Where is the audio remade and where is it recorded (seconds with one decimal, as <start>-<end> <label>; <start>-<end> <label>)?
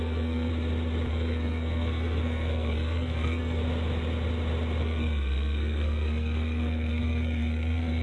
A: 0.0-0.5 remade; 0.5-1.1 recorded; 1.1-3.6 remade; 3.6-4.8 recorded; 4.8-8.0 remade